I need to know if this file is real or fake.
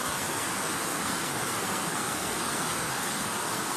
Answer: fake